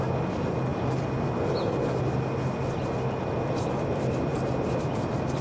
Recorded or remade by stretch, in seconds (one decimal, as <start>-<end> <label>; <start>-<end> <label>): 0.0-5.4 recorded